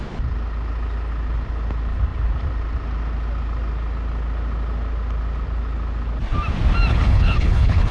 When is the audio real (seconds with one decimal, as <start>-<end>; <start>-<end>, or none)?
0.0-6.9